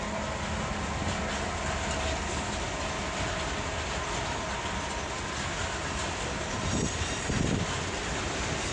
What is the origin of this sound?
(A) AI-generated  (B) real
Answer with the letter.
B